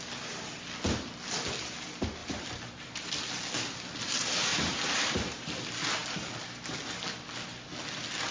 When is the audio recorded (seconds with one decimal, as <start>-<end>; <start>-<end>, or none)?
0.0-2.2; 3.1-4.5; 5.5-8.3